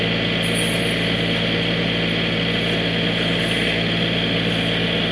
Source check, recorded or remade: recorded